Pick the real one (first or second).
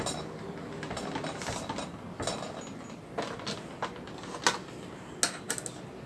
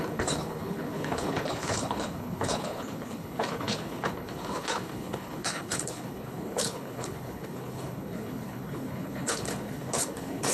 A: first